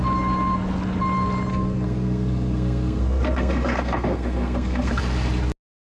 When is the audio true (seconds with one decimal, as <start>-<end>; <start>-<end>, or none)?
0.0-1.5; 5.0-5.9